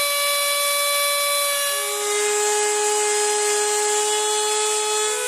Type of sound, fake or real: real